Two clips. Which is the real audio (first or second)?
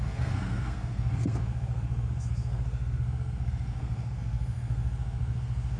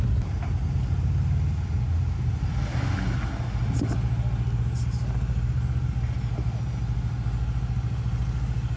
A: second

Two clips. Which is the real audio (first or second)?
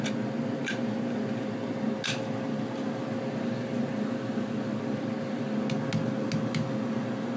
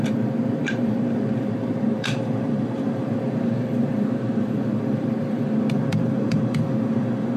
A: first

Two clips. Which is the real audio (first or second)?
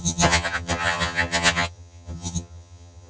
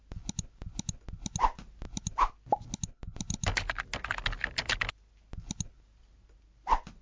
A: second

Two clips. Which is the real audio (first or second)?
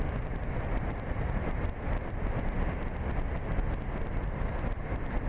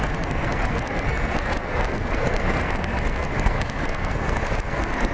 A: first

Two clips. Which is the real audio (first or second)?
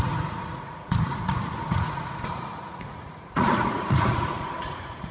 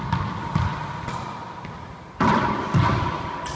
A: second